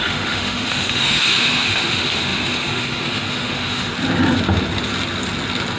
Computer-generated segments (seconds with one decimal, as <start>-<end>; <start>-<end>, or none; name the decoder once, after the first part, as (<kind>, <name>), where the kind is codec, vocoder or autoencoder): 0.0-3.9 (autoencoder, DAC-VAE)